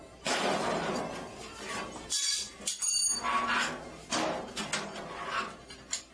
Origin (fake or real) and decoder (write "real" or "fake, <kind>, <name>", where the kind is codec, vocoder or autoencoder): real